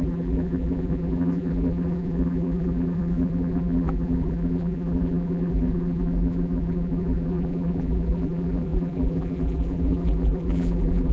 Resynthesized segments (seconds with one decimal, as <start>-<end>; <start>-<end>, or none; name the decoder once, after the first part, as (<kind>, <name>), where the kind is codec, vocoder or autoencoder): 0.0-11.1 (vocoder, BigVGAN v2)